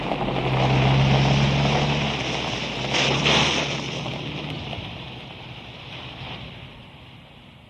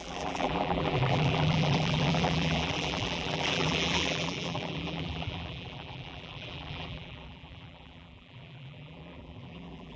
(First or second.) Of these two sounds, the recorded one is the first